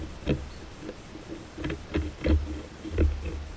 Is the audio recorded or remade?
recorded